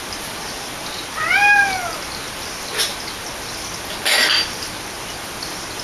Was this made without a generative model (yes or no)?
yes